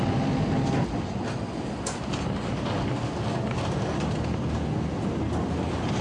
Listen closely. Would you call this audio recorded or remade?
recorded